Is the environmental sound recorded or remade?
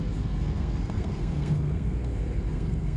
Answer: remade